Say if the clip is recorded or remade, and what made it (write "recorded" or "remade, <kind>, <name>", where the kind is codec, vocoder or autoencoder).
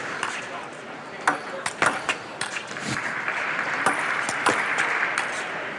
recorded